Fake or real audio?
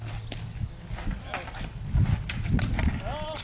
real